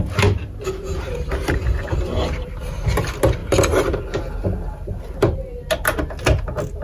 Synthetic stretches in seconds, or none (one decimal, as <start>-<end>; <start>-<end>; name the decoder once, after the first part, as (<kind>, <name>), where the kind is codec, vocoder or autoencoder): 3.4-4.0 (vocoder, BigVGAN v2)